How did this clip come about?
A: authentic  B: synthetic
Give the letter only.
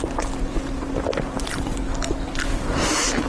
A